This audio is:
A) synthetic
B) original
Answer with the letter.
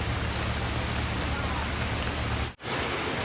B